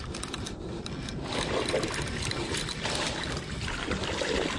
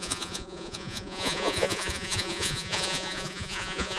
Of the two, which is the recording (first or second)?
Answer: first